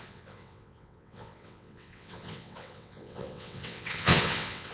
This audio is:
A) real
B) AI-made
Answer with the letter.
B